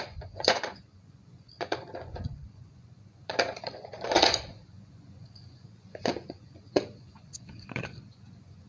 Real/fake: fake